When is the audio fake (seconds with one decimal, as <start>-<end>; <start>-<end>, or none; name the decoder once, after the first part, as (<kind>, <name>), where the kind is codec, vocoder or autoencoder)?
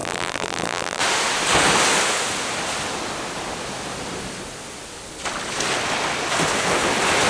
0.0-1.0 (vocoder, BigVGAN v2)